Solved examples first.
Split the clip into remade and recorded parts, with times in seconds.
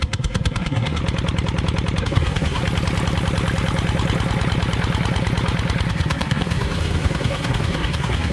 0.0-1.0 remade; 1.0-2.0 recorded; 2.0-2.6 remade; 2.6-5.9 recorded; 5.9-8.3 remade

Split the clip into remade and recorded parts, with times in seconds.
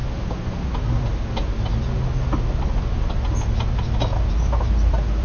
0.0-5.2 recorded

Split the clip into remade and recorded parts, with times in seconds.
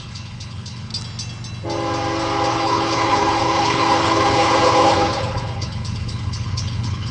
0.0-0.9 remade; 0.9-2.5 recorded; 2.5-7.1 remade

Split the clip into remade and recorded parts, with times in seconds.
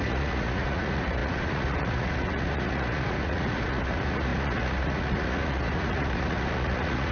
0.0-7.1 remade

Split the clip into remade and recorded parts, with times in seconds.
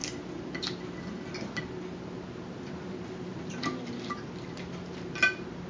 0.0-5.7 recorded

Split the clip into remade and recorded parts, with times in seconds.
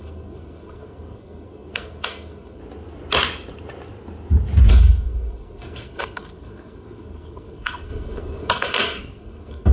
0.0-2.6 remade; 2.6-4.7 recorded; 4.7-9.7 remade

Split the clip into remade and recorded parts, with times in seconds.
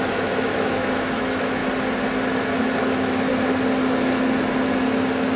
0.0-1.6 remade; 1.6-2.8 recorded; 2.8-3.3 remade; 3.3-5.4 recorded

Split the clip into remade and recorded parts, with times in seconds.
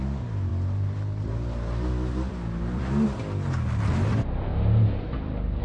0.0-5.6 recorded